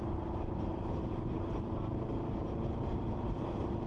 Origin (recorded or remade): remade